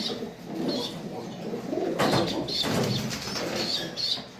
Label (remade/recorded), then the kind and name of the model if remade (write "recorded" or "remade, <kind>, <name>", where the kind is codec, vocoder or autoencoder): recorded